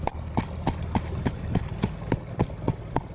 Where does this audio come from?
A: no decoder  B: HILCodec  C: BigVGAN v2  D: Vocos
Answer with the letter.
C